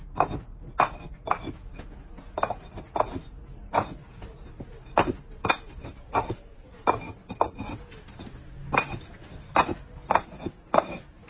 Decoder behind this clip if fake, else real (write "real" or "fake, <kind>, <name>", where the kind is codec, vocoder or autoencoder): real